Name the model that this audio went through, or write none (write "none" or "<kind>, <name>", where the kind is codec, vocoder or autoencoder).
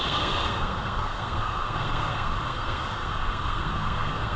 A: codec, SNAC